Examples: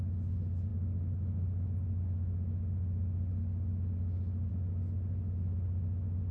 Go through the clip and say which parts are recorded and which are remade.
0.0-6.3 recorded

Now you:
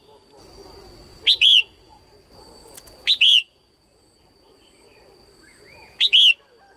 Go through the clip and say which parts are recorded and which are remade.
0.0-1.1 recorded; 1.1-2.0 remade; 2.0-2.6 recorded; 2.6-4.2 remade; 4.2-5.5 recorded; 5.5-6.1 remade; 6.1-6.8 recorded

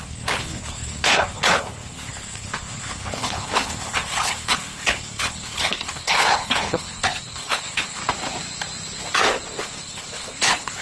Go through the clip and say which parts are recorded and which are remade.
0.0-8.0 remade; 8.0-9.6 recorded; 9.6-10.8 remade

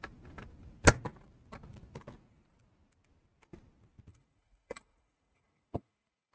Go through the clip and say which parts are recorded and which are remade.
0.0-4.1 recorded; 4.1-6.3 remade

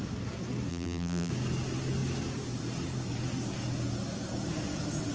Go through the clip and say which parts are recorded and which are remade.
0.0-0.7 recorded; 0.7-1.3 remade; 1.3-5.1 recorded

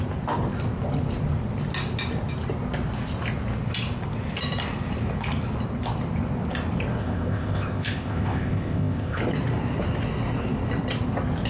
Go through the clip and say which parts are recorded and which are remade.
0.0-7.0 recorded; 7.0-9.2 remade; 9.2-11.5 recorded

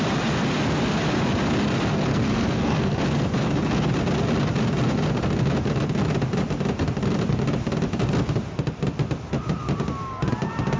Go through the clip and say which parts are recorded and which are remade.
0.0-2.1 recorded; 2.1-3.0 remade; 3.0-10.8 recorded